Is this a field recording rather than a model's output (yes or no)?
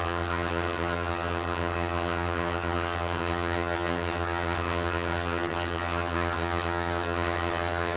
no